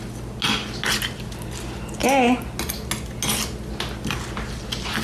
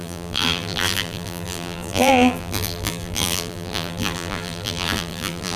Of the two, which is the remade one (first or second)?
second